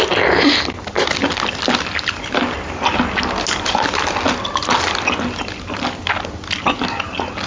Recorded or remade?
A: recorded